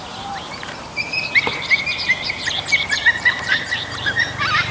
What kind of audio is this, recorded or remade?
remade